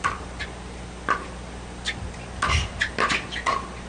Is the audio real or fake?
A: real